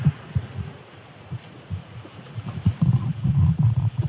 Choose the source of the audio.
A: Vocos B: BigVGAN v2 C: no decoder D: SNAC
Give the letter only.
A